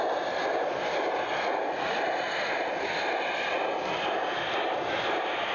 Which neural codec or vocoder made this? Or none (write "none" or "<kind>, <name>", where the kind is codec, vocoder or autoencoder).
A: none